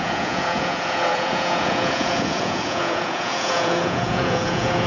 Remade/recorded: remade